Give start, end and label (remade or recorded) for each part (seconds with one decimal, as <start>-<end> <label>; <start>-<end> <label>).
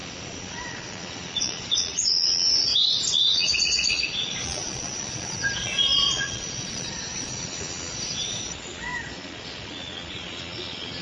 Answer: 0.0-2.7 remade; 2.7-3.2 recorded; 3.2-11.0 remade